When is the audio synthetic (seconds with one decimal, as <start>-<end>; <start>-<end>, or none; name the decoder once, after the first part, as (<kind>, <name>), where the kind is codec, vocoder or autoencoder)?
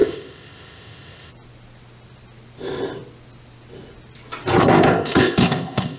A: 0.0-1.3 (codec, ZipCodec); 4.6-6.0